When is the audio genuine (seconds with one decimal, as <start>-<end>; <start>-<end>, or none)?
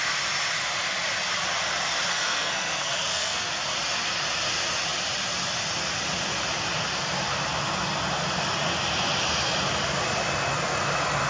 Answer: 0.0-2.1; 3.5-11.3